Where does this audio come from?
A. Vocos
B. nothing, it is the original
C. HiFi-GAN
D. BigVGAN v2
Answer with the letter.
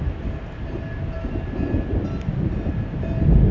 B